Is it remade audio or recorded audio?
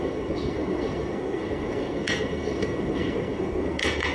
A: remade